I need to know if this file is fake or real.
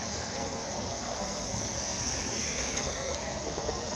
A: fake